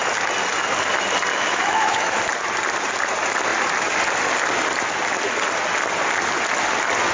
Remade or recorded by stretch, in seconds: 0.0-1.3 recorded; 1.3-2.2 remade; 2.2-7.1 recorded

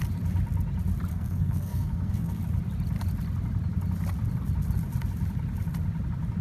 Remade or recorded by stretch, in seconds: 0.0-1.1 recorded; 1.1-2.4 remade; 2.4-6.4 recorded

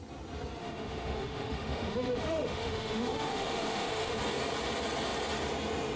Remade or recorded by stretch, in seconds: 0.0-0.6 recorded; 0.6-4.2 remade; 4.2-6.0 recorded

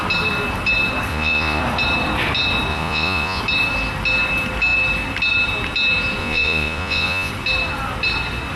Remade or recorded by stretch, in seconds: 0.0-1.1 recorded; 1.1-1.6 remade; 1.6-2.7 recorded; 2.7-3.4 remade; 3.4-6.2 recorded; 6.2-7.3 remade; 7.3-8.6 recorded

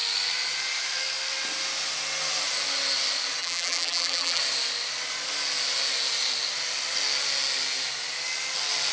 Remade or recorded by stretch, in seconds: 0.0-3.4 recorded; 3.4-4.4 remade; 4.4-8.9 recorded

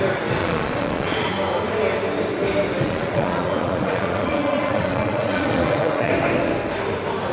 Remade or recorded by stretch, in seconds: 0.0-0.4 recorded; 0.4-1.3 remade; 1.3-2.8 recorded; 2.8-6.1 remade; 6.1-7.3 recorded

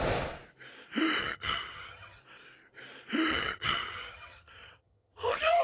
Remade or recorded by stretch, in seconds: 0.0-1.2 recorded; 1.2-2.2 remade; 2.2-3.3 recorded; 3.3-5.6 remade